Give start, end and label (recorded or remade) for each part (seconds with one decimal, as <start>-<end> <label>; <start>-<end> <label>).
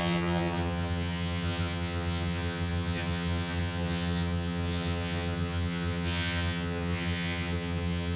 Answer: 0.0-8.2 remade